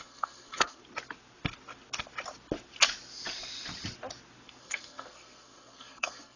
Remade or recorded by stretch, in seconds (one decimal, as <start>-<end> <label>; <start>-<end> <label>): 0.0-0.8 remade; 0.8-4.6 recorded; 4.6-6.4 remade